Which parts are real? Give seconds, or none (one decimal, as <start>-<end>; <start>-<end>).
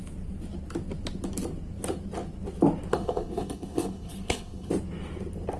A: 0.0-2.9; 4.7-5.6